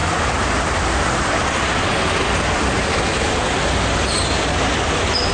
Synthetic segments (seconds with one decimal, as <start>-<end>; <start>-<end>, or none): none